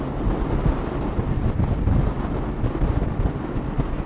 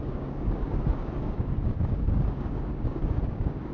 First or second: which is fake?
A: second